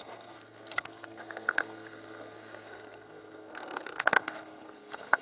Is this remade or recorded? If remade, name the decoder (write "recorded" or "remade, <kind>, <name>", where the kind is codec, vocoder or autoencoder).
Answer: remade, codec, SNAC